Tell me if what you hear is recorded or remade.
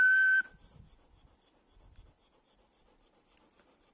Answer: recorded